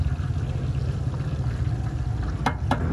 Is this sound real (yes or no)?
yes